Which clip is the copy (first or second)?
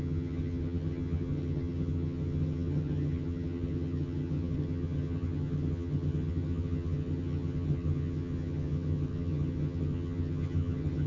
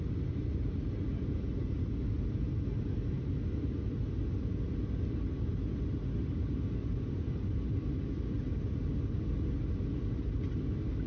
first